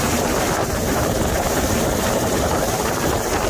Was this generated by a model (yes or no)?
no